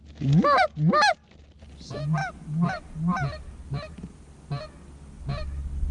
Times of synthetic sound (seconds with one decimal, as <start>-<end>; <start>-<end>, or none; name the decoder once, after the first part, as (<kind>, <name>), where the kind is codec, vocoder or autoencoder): none